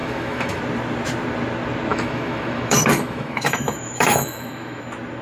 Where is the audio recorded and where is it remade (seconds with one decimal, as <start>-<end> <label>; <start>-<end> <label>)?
0.0-0.6 remade; 0.6-1.9 recorded; 1.9-4.8 remade; 4.8-5.2 recorded